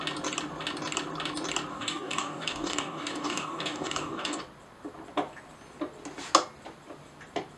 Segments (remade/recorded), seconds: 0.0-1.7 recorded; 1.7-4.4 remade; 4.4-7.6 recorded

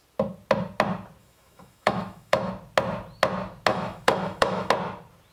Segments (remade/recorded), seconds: 0.0-1.2 recorded; 1.2-2.5 remade; 2.5-3.7 recorded; 3.7-4.7 remade; 4.7-5.3 recorded

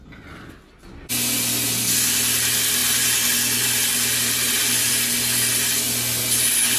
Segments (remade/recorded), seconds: 0.0-6.8 recorded

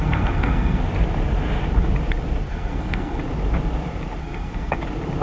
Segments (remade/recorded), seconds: 0.0-0.8 remade; 0.8-2.5 recorded; 2.5-3.2 remade; 3.2-4.2 recorded; 4.2-4.8 remade; 4.8-5.2 recorded

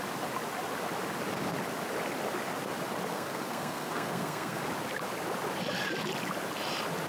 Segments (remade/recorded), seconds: 0.0-3.1 recorded; 3.1-4.6 remade; 4.6-7.1 recorded

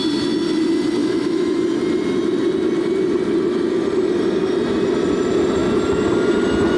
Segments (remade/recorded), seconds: 0.0-1.0 recorded; 1.0-1.6 remade; 1.6-6.8 recorded

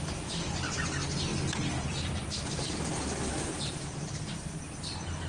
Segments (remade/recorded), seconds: 0.0-1.3 recorded; 1.3-2.7 remade; 2.7-3.3 recorded; 3.3-4.6 remade; 4.6-5.3 recorded